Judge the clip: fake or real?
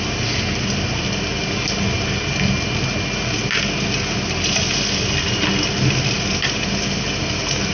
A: real